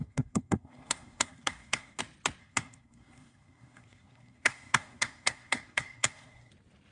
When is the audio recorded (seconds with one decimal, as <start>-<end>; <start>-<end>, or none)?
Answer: 2.0-2.4; 6.5-6.9